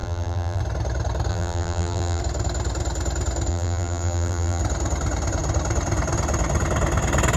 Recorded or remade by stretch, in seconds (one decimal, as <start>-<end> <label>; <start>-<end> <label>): 0.0-0.6 remade; 0.6-1.3 recorded; 1.3-2.2 remade; 2.2-3.5 recorded; 3.5-4.6 remade; 4.6-7.4 recorded